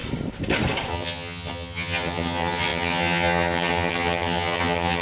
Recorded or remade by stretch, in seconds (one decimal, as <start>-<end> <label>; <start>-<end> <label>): 0.0-0.9 recorded; 0.9-5.0 remade